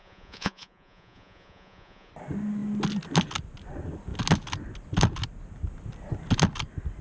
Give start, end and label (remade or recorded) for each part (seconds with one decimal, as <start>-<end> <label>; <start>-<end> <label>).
0.0-2.1 remade; 2.1-7.0 recorded